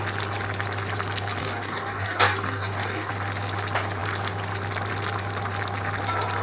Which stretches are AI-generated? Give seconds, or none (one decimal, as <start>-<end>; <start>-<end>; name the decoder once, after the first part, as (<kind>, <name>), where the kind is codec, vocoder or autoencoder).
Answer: 1.4-3.1 (codec, DAC)